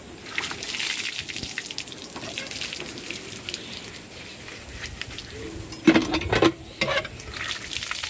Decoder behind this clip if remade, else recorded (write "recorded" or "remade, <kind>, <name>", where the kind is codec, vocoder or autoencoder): recorded